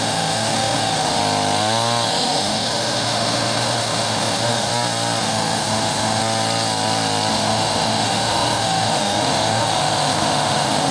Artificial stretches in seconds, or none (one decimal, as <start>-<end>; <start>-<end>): 0.0-1.2; 2.1-4.7; 5.2-6.2; 7.3-10.9